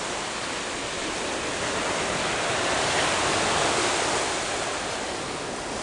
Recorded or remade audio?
recorded